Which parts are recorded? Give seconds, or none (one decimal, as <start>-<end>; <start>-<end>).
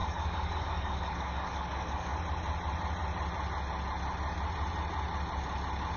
2.1-6.0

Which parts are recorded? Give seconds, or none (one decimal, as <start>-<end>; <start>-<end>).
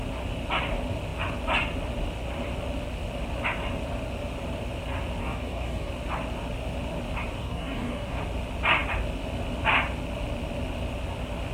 0.0-5.2; 5.9-7.4; 8.2-11.5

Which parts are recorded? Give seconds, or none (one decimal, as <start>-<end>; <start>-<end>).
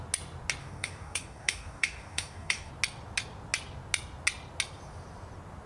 0.0-0.6; 2.7-5.7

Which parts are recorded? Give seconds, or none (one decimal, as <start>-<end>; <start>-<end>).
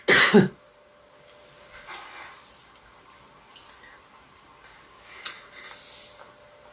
0.0-6.7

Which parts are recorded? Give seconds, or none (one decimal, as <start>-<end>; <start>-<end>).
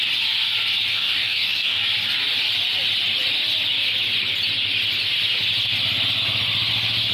0.0-0.9; 1.8-7.1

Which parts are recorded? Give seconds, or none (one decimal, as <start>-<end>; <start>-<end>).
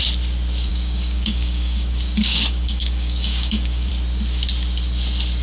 0.0-0.7; 3.9-5.4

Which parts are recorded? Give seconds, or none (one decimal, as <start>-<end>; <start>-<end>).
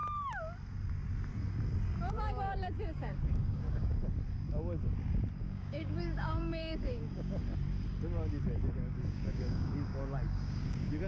0.0-2.1; 4.0-5.4; 7.4-8.7